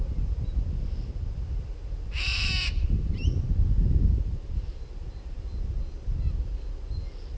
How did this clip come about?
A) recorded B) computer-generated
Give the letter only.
A